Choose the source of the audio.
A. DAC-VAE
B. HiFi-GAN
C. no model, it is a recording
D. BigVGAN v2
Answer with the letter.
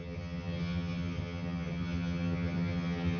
B